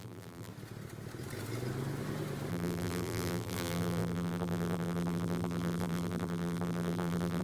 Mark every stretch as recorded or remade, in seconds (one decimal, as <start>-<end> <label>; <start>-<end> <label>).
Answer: 0.0-0.5 remade; 0.5-2.5 recorded; 2.5-7.4 remade